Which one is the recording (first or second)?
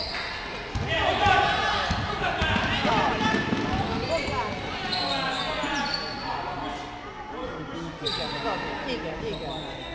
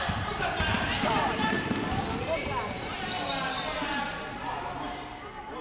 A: first